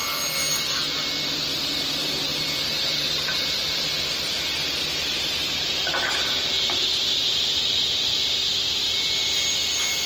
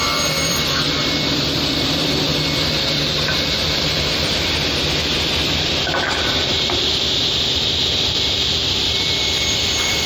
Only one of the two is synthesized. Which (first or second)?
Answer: second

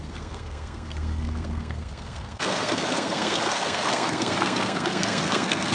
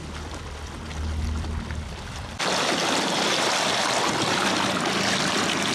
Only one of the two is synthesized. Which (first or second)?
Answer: first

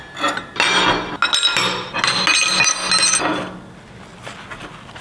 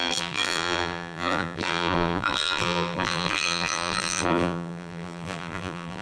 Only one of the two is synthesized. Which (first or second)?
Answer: second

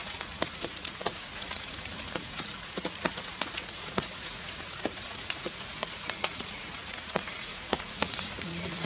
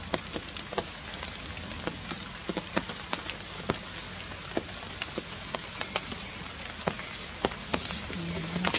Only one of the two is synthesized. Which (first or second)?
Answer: first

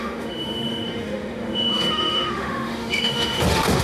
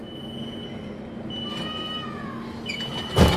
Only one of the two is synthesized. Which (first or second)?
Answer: first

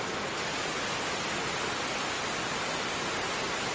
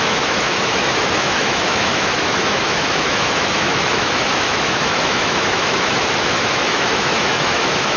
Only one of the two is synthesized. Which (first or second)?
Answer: second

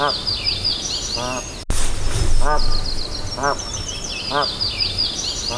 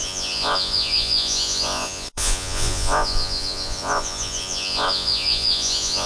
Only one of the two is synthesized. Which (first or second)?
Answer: second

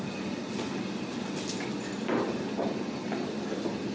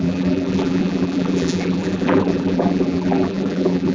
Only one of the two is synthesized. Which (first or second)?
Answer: second